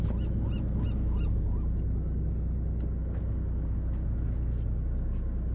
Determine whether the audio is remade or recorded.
recorded